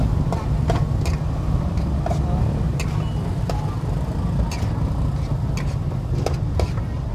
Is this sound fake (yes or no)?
no